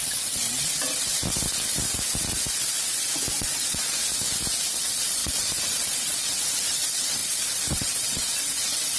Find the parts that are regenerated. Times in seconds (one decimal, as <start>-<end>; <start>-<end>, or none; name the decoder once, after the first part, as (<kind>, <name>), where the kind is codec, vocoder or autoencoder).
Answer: 0.0-1.1 (vocoder, WaveNeXt); 3.4-4.0; 4.8-9.0